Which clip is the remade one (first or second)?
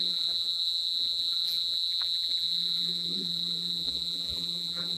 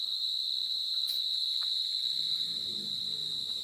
first